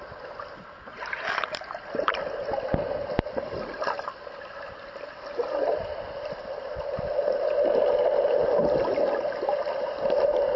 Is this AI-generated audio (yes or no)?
no